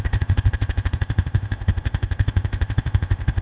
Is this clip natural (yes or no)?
no